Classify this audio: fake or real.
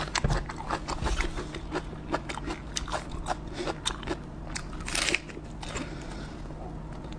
real